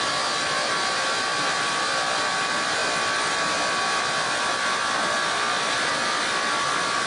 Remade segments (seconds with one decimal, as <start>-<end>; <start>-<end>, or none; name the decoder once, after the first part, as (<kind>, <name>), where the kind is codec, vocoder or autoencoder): 0.0-2.8 (vocoder, BigVGAN v2); 4.0-7.1